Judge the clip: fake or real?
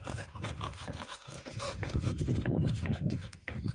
fake